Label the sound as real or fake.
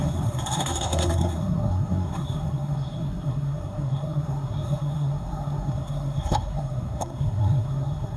fake